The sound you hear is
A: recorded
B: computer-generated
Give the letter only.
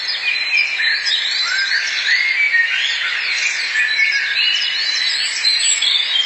A